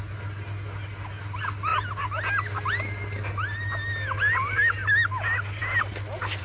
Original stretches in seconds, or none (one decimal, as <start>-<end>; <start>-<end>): 0.0-6.4